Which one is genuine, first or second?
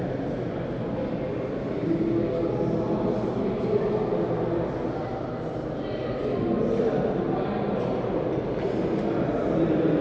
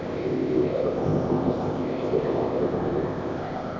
first